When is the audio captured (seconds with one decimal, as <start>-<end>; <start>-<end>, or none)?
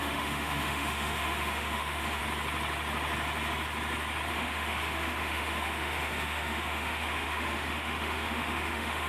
2.2-4.3